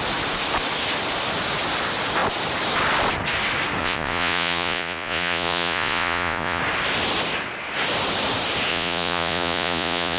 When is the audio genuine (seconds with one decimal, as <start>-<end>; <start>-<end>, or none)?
0.0-3.8; 6.6-8.7